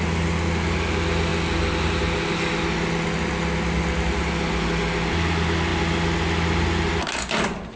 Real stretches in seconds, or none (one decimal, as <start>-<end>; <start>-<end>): 0.0-7.8